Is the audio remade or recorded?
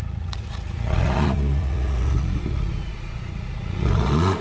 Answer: remade